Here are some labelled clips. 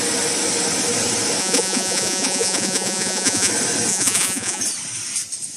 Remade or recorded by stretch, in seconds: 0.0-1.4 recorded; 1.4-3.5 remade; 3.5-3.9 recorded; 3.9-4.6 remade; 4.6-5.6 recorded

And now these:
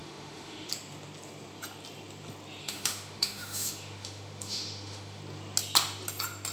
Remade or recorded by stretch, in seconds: 0.0-0.7 remade; 0.7-2.6 recorded; 2.6-5.2 remade; 5.2-6.5 recorded

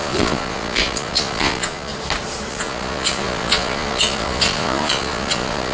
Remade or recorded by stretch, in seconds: 0.0-1.9 remade; 1.9-2.5 recorded; 2.5-5.7 remade